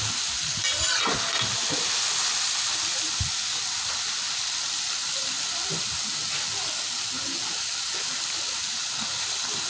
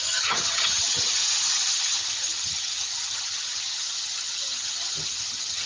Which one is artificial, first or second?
second